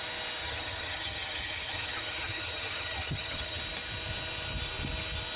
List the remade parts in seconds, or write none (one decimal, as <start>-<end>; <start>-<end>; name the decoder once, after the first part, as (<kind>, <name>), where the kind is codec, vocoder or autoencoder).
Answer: 0.4-3.6 (vocoder, HiFi-GAN)